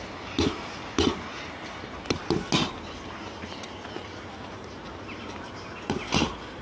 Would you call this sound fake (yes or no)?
no